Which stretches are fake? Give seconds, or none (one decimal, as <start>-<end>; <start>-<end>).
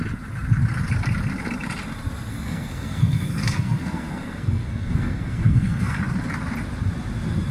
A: 2.3-6.0